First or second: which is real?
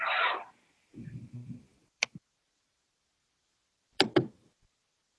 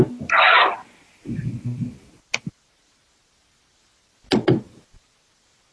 second